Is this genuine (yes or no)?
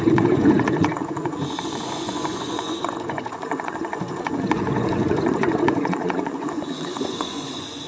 no